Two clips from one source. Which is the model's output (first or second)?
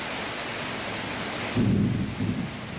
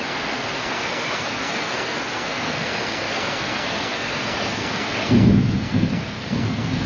second